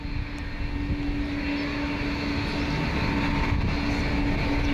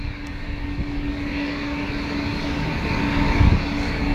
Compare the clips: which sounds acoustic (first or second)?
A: first